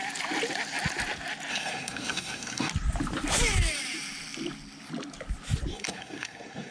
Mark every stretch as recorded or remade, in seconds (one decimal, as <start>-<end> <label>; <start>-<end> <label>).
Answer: 0.0-1.5 recorded; 1.5-2.7 remade; 2.7-5.7 recorded; 5.7-6.7 remade